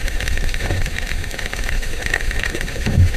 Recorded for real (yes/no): no